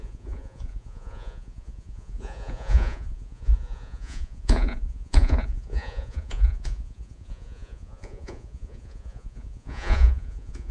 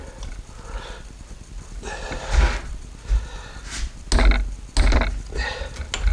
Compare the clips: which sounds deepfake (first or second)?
first